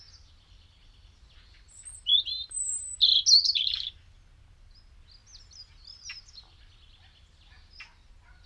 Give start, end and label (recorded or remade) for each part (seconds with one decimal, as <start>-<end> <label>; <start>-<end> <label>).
0.0-8.5 recorded